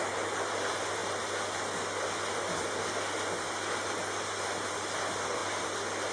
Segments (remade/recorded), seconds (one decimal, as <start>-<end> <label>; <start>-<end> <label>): 0.0-6.1 recorded